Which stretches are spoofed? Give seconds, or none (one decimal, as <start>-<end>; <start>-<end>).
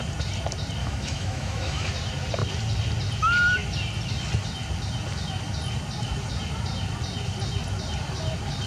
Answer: 0.8-1.9